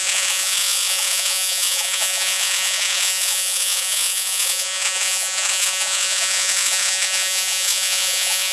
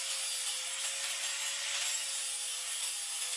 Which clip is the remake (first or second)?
first